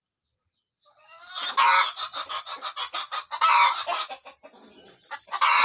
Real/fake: real